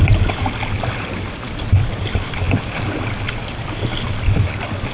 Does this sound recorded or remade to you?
recorded